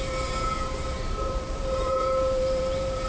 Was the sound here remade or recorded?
remade